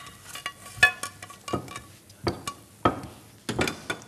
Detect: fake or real real